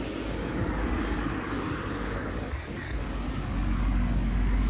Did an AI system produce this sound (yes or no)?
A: yes